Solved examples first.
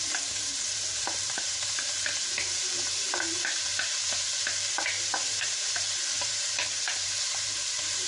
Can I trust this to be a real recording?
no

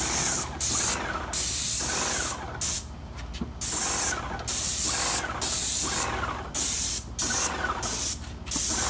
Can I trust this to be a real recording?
yes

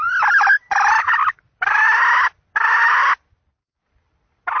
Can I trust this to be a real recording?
no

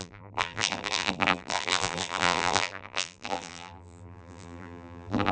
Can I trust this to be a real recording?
no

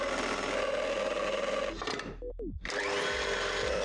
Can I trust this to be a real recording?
yes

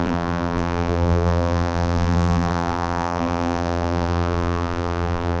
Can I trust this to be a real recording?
no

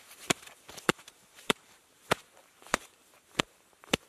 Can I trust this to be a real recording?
no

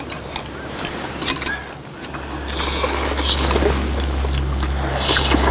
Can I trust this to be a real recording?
yes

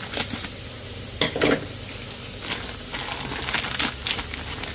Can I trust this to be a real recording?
yes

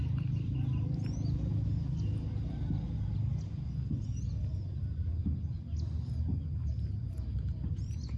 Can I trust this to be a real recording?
yes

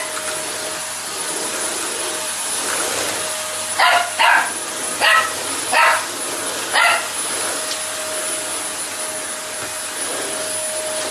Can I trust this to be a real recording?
yes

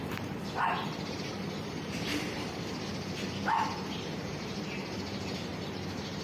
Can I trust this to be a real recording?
no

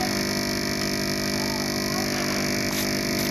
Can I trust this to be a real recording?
yes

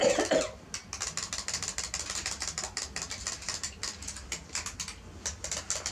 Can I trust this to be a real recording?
yes